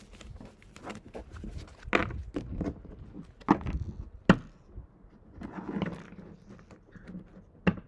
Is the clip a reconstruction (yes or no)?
no